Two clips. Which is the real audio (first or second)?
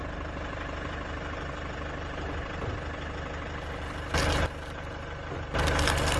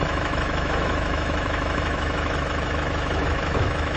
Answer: first